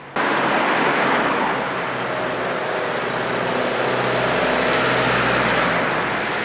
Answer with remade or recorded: recorded